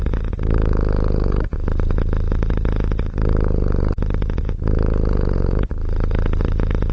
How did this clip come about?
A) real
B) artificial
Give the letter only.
A